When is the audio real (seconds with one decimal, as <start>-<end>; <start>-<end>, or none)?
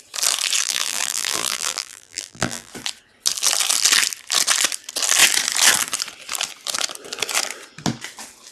0.0-0.6; 2.7-8.5